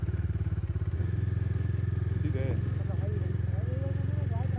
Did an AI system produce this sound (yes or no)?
no